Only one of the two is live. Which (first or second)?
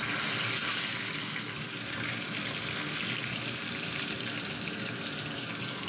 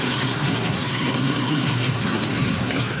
first